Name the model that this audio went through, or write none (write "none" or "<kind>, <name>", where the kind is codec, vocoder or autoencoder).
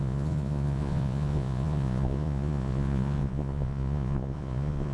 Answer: vocoder, Vocos